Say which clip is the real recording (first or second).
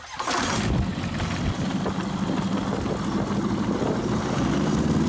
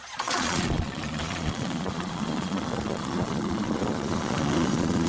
first